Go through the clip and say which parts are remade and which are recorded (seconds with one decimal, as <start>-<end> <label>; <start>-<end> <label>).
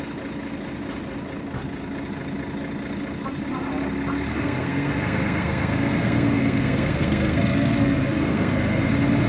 0.0-4.3 recorded; 4.3-8.9 remade; 8.9-9.3 recorded